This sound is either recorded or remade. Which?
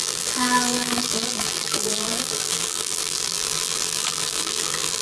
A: remade